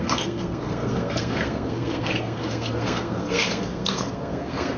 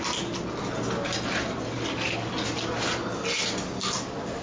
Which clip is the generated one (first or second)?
first